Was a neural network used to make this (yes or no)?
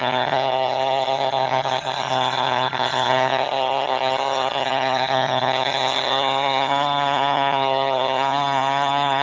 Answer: yes